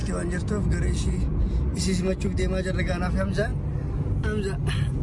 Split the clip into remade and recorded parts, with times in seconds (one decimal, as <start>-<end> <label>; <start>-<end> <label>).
0.0-5.0 recorded